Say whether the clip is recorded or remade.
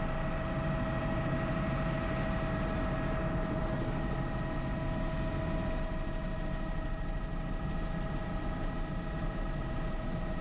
recorded